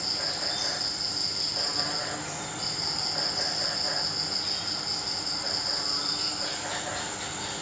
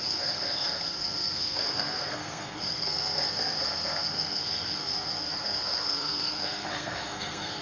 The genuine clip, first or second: first